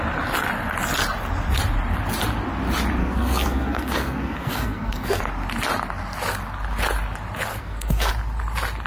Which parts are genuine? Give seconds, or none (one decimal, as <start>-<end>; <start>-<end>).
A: 0.0-3.0; 5.2-7.5; 8.1-8.9